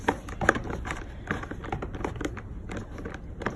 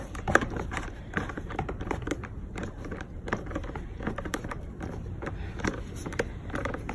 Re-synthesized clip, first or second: second